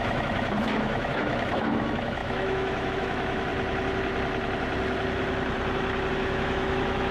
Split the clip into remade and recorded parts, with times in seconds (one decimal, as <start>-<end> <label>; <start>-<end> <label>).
0.0-3.5 remade; 3.5-6.1 recorded; 6.1-7.1 remade